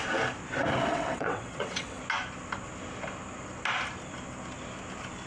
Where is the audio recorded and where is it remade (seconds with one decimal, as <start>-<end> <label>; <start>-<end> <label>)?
0.0-0.9 recorded; 0.9-2.0 remade; 2.0-5.3 recorded